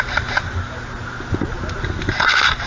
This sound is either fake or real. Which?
real